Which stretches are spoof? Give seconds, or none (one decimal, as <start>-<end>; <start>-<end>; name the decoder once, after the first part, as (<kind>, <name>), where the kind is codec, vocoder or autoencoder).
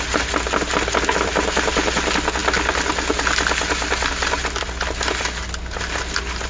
none